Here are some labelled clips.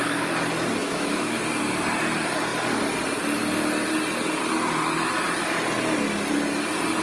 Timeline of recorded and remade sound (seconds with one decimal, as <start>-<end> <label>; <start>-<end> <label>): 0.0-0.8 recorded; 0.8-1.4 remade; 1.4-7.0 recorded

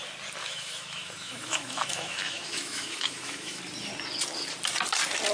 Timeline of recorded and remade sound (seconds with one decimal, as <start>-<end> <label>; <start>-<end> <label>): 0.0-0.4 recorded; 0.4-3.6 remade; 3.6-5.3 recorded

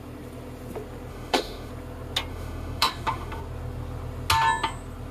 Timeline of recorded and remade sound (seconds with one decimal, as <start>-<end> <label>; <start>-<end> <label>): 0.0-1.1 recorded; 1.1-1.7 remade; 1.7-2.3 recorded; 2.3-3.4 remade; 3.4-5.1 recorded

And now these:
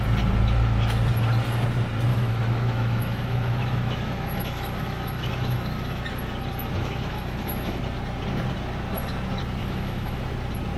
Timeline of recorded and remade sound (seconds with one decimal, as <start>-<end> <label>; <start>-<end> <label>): 0.0-2.1 recorded; 2.1-6.0 remade; 6.0-6.8 recorded; 6.8-7.8 remade; 7.8-9.6 recorded; 9.6-10.2 remade; 10.2-10.8 recorded

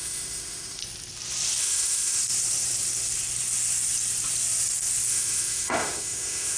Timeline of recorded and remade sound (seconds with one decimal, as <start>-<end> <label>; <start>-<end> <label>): 0.0-0.8 remade; 0.8-1.6 recorded; 1.6-2.2 remade; 2.2-5.1 recorded; 5.1-6.6 remade